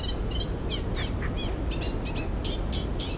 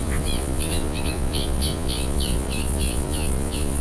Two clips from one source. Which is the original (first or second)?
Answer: first